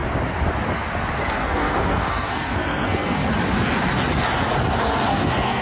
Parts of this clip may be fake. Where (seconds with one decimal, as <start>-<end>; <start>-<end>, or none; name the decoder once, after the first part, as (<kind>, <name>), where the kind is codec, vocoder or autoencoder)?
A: 1.3-3.2 (codec, SNAC); 4.8-5.6